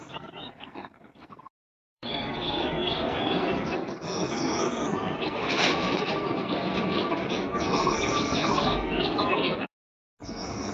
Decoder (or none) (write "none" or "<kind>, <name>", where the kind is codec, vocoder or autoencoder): codec, SNAC